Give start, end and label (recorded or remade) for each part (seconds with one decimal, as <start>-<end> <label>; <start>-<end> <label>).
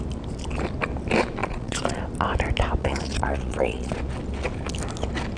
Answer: 0.0-1.4 recorded; 1.4-2.0 remade; 2.0-2.8 recorded; 2.8-4.0 remade; 4.0-5.4 recorded